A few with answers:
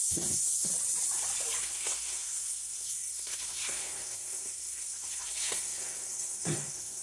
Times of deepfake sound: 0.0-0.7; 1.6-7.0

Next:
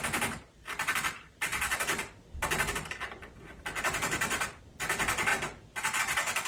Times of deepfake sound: 1.5-4.6

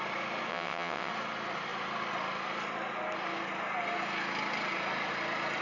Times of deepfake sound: 0.5-1.1

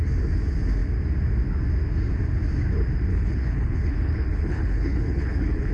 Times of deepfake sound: 3.1-5.7

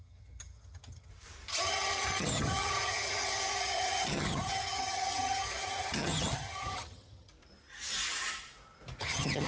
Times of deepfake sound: 0.0-1.1; 1.6-7.3; 9.0-9.5

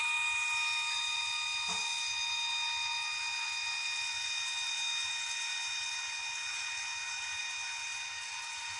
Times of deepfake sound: none

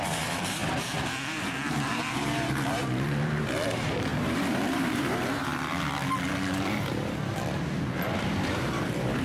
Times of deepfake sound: 0.0-5.5; 8.2-9.2

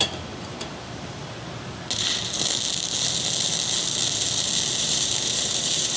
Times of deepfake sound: 0.0-1.2; 4.8-6.0